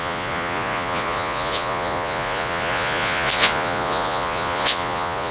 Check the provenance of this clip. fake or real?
fake